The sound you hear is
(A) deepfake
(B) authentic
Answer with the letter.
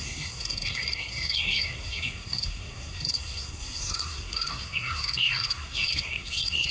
A